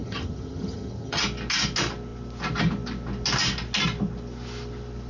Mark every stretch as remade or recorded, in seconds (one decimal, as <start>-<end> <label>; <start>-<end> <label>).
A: 0.0-1.2 remade; 1.2-5.1 recorded